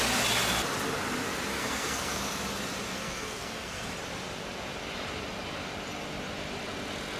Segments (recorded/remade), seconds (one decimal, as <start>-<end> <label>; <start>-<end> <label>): 0.0-1.5 recorded; 1.5-2.2 remade; 2.2-2.9 recorded; 2.9-3.9 remade; 3.9-7.2 recorded